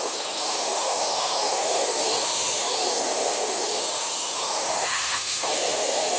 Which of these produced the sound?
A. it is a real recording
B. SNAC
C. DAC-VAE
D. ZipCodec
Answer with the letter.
C